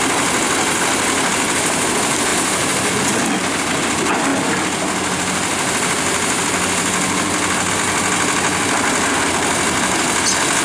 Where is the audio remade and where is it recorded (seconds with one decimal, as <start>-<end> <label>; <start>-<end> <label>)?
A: 0.0-2.3 recorded; 2.3-2.9 remade; 2.9-10.6 recorded